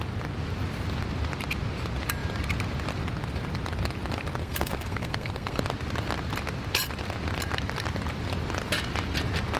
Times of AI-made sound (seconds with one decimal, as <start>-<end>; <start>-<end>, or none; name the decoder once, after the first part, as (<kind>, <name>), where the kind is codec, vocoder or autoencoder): 4.4-5.6 (codec, SNAC)